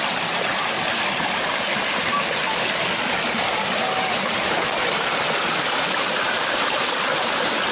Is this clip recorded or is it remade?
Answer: recorded